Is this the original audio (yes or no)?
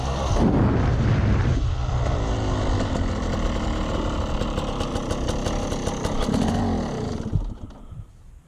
yes